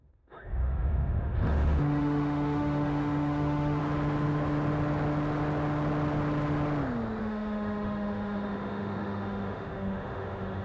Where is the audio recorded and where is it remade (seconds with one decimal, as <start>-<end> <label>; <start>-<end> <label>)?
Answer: 0.0-3.8 remade; 3.8-7.2 recorded; 7.2-10.6 remade